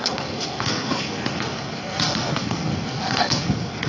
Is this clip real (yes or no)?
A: no